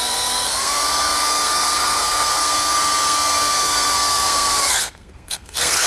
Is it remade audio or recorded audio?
remade